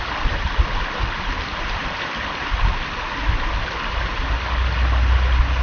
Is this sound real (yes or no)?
yes